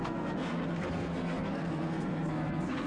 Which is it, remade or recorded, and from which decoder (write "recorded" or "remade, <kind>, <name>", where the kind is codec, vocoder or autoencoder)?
remade, codec, SNAC